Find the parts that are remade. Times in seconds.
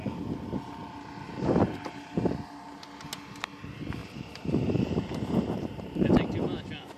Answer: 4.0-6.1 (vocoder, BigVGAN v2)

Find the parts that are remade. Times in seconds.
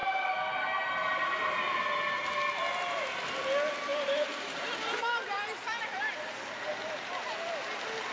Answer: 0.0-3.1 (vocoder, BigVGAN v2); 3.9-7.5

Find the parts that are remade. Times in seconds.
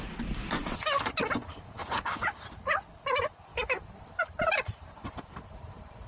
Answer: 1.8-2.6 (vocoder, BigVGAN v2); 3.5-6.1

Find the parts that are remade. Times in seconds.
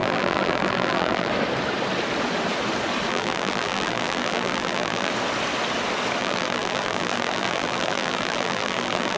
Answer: 0.0-1.3 (vocoder, BigVGAN v2); 3.1-5.1; 6.2-9.2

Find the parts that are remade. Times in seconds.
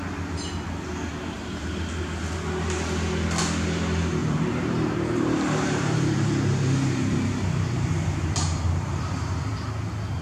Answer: 1.1-1.7 (vocoder, BigVGAN v2); 4.2-9.3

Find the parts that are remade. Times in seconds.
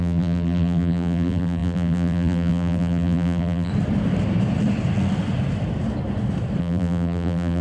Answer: 0.0-3.7 (vocoder, BigVGAN v2); 6.6-7.6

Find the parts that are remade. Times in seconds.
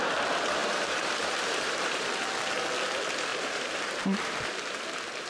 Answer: 0.6-2.1 (vocoder, BigVGAN v2); 3.3-4.8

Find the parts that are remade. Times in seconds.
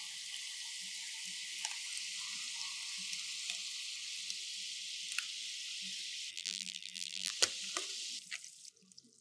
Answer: 6.3-7.3 (vocoder, BigVGAN v2)